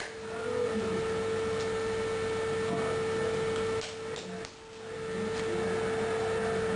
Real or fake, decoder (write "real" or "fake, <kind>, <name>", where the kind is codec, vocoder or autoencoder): real